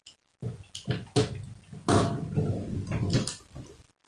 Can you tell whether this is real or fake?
real